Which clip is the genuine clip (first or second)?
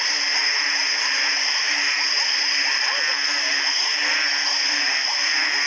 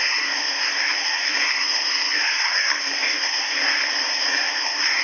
first